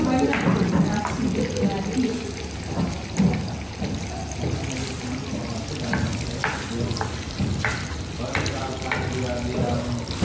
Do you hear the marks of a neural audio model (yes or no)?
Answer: no